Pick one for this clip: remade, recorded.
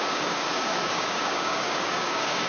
remade